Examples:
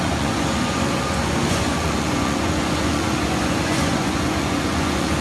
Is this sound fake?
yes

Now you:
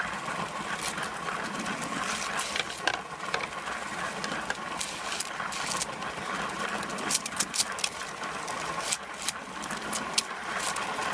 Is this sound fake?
no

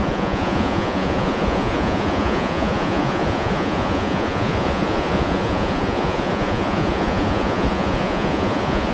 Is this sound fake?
yes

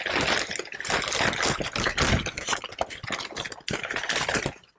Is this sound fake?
no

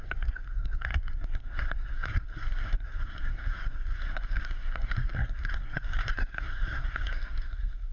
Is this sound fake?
yes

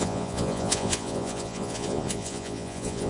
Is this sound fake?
yes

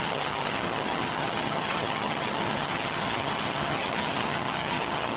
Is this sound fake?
yes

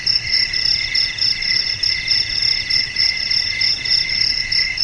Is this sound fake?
no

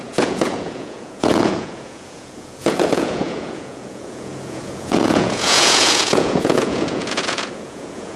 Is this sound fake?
yes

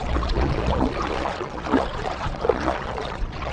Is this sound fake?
yes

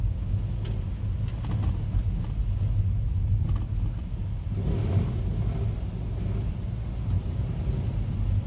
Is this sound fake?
no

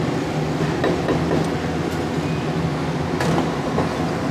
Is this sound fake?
no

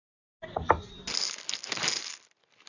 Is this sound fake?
no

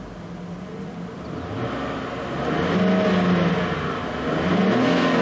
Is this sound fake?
no